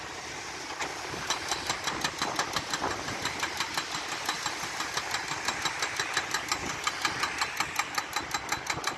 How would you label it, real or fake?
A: real